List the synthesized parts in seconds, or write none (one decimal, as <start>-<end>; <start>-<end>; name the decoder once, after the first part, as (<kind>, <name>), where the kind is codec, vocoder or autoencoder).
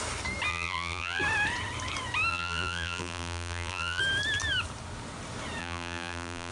0.5-1.2 (vocoder, BigVGAN v2); 2.3-4.0; 5.6-6.5